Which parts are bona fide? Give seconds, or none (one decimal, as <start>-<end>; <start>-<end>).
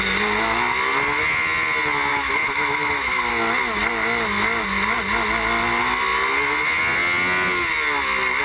0.0-2.1; 3.3-8.4